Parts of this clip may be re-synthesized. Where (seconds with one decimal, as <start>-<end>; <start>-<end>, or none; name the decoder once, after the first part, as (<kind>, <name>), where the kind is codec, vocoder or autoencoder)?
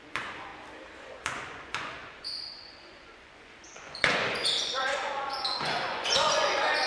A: 0.0-0.5 (vocoder, Vocos); 1.0-6.9